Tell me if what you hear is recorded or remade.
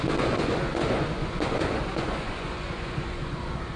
remade